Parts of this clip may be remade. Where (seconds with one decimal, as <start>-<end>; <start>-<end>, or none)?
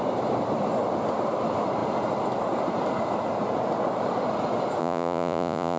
4.8-5.8